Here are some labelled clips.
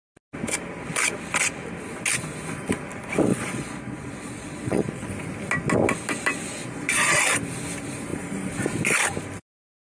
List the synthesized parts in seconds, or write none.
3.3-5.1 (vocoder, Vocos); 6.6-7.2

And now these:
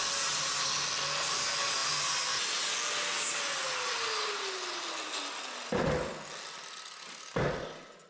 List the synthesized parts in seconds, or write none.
none

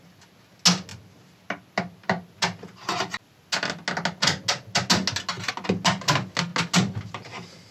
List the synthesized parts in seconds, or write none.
none